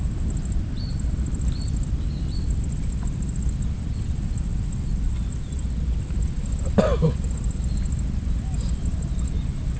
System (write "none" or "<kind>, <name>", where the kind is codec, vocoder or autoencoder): none